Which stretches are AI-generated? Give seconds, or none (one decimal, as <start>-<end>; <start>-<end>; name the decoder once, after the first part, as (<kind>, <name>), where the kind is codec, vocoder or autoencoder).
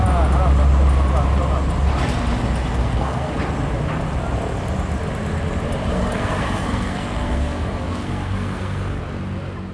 2.8-3.4 (codec, SNAC); 5.9-9.0